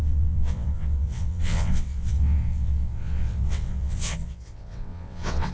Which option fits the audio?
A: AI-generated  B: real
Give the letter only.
A